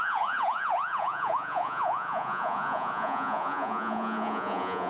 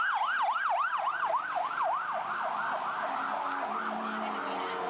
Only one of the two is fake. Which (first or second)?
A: first